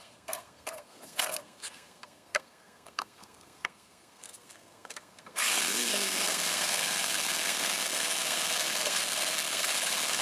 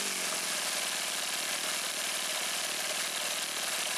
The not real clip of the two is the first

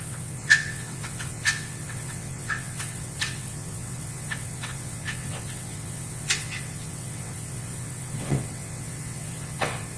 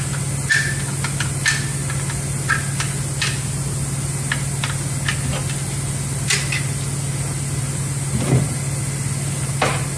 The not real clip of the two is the first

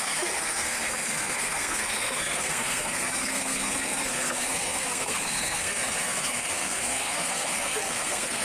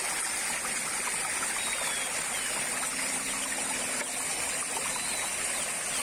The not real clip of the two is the first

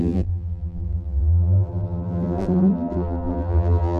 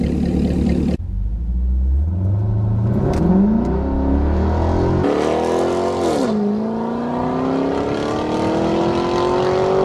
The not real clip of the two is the first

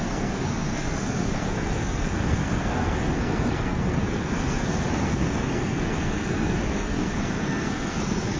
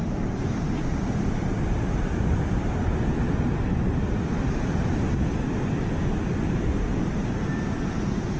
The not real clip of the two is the first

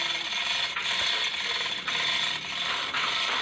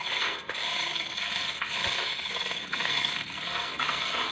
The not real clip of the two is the second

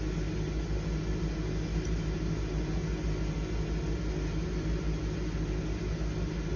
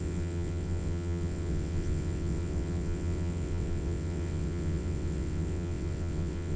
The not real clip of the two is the second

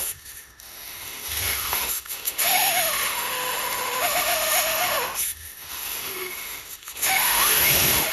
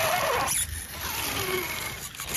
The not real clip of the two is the first